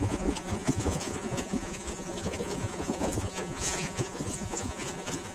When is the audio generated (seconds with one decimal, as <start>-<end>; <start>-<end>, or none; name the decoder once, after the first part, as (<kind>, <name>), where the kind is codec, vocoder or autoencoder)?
0.0-5.3 (vocoder, Vocos)